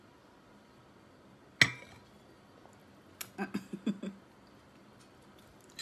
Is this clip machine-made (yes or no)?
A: no